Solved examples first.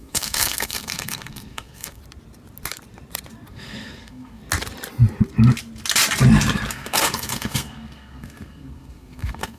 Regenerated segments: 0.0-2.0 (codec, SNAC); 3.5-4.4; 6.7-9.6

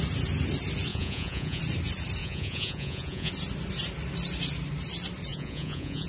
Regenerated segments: 0.9-1.6 (vocoder, Vocos); 2.2-3.3; 5.3-6.1

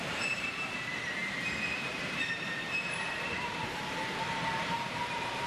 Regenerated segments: 0.0-5.5 (vocoder, BigVGAN v2)

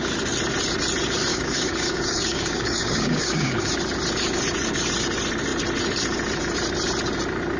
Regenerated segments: 1.3-3.7 (codec, DAC)

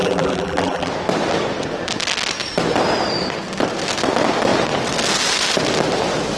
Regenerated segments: 0.0-0.9 (vocoder, BigVGAN v2)

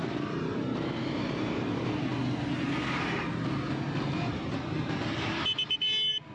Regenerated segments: none

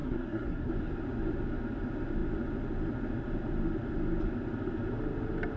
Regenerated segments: 0.0-0.7 (codec, SNAC)

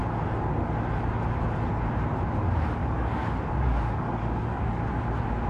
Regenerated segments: 2.8-4.9 (codec, DAC)